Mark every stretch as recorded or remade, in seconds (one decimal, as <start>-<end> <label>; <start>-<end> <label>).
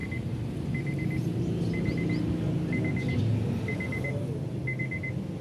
0.0-5.4 recorded